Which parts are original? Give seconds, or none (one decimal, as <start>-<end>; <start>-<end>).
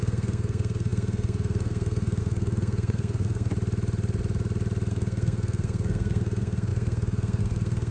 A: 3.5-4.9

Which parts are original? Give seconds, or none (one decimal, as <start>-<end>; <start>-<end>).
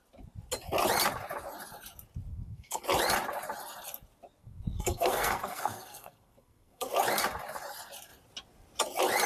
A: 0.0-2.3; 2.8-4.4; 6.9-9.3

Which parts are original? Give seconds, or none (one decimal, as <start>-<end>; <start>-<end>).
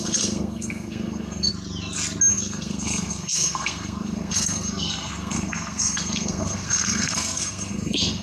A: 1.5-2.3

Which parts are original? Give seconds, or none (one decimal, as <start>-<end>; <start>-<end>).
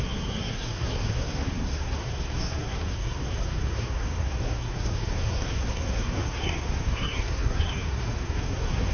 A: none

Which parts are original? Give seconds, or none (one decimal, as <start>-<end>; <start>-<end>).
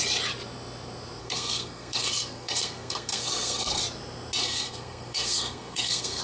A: 0.0-1.2; 3.8-4.4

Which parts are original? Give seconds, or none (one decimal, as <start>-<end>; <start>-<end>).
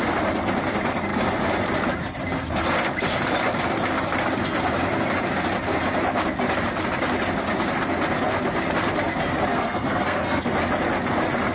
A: 0.0-9.5; 10.4-11.5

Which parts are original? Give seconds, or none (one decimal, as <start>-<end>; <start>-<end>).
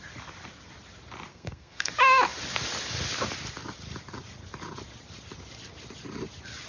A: 0.0-1.3; 1.9-6.7